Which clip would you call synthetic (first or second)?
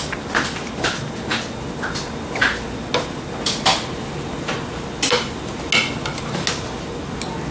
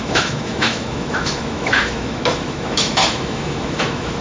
second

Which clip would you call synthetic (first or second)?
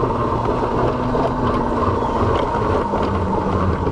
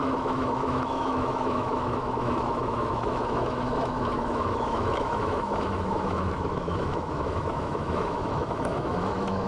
second